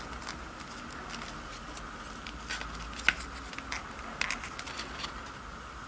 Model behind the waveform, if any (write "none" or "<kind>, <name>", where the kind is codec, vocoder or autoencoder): none